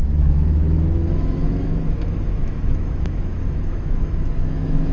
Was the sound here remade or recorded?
remade